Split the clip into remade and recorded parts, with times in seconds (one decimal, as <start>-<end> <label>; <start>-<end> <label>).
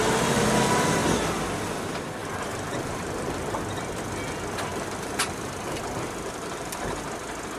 0.0-2.2 recorded; 2.2-3.6 remade; 3.6-4.7 recorded; 4.7-6.8 remade; 6.8-7.6 recorded